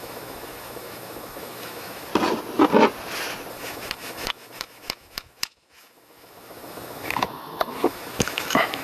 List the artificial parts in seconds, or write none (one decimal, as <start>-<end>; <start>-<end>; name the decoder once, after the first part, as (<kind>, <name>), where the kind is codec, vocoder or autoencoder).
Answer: 0.0-2.1 (autoencoder, DAC-VAE); 3.5-8.8